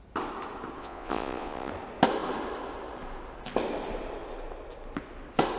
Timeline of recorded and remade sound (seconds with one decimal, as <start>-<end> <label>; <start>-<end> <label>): 0.0-0.8 recorded; 0.8-1.7 remade; 1.7-5.6 recorded